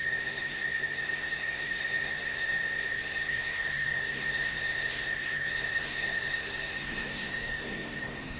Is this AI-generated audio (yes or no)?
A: yes